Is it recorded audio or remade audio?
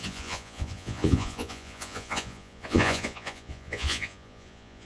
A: remade